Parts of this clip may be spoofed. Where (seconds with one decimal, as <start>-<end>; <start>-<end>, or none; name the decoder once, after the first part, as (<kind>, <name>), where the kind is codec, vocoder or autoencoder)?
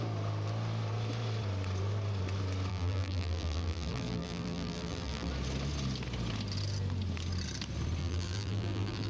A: 2.7-5.3 (vocoder, BigVGAN v2); 8.0-9.1